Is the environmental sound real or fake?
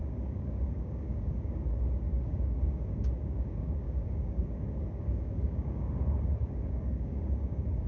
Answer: fake